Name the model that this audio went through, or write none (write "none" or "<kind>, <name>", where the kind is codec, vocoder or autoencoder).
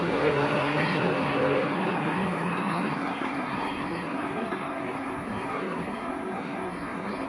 codec, SNAC